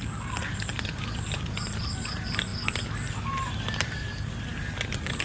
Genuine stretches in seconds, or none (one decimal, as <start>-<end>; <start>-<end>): 0.0-5.2